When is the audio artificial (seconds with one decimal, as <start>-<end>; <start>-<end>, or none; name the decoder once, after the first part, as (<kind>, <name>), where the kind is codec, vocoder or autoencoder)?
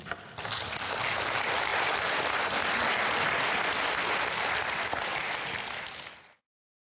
none